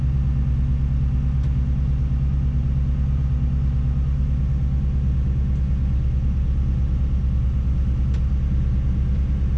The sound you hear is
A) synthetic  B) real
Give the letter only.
B